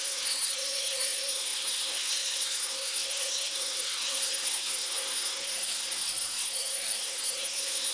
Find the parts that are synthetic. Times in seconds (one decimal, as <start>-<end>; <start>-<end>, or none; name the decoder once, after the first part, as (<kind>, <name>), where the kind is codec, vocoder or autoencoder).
0.0-7.9 (codec, SNAC)